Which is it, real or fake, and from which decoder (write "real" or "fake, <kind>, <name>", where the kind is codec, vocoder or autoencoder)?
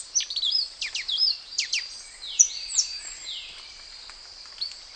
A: fake, vocoder, BigVGAN v2